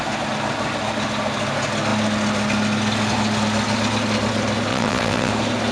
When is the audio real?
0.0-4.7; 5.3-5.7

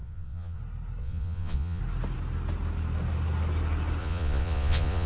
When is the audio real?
0.6-1.0; 1.8-4.0

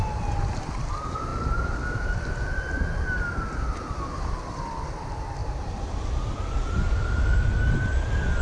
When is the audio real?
0.0-8.4

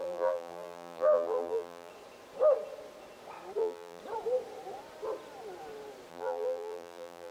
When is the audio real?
1.9-3.6; 4.0-6.1